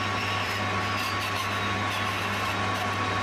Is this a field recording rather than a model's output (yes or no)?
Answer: yes